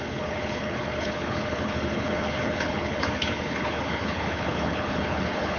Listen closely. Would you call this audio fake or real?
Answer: fake